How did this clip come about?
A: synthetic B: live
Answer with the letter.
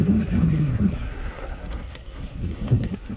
A